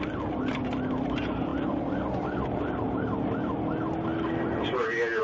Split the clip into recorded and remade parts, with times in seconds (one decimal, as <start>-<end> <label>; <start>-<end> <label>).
0.0-5.2 recorded